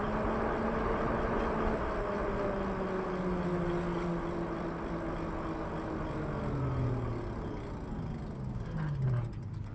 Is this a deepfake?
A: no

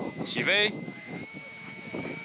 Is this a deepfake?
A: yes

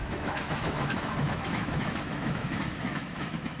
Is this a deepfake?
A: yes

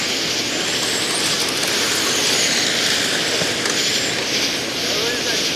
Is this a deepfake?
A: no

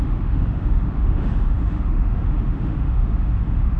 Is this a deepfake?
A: yes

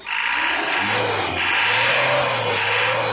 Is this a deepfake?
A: no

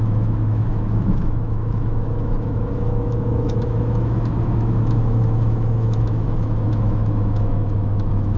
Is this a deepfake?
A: yes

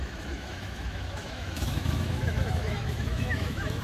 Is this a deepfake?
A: yes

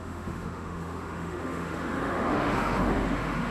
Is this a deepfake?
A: yes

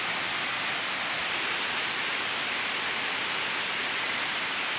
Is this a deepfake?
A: no